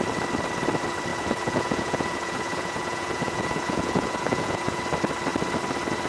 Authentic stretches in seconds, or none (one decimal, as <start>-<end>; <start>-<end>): 0.0-1.1; 4.8-6.1